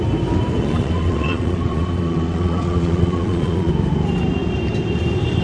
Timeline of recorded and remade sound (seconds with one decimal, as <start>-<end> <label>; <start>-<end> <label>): 0.0-0.6 recorded; 0.6-3.7 remade; 3.7-5.4 recorded